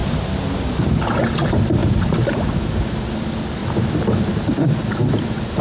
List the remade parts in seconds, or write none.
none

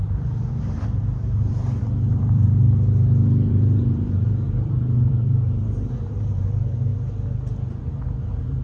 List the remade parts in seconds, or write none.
0.0-2.6 (vocoder, BigVGAN v2); 3.5-6.9; 7.9-8.6

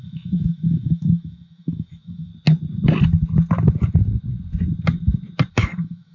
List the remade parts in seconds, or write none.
0.0-2.3 (autoencoder, DAC-VAE); 5.5-6.1